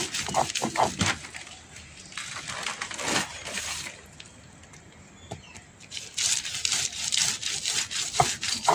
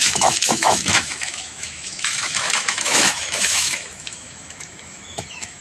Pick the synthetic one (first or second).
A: second